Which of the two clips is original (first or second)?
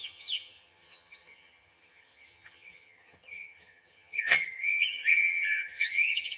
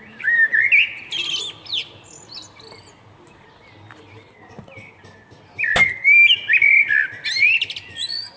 second